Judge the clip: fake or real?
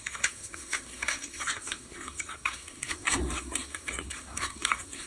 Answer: fake